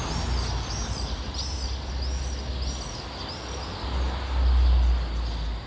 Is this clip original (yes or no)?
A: yes